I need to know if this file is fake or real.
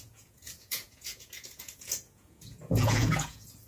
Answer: fake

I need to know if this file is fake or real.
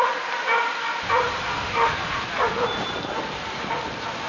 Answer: real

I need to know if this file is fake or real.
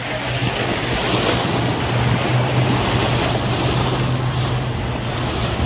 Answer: real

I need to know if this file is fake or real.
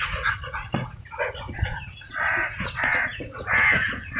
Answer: fake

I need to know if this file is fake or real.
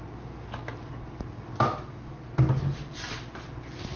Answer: real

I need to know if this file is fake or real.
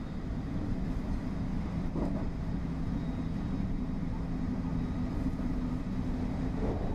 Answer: real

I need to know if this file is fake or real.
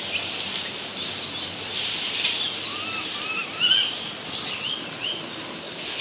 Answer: real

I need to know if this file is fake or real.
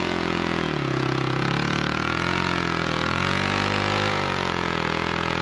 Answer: fake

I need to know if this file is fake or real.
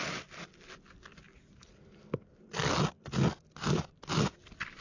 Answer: real